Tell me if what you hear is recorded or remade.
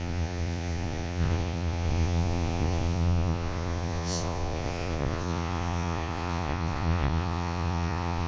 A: remade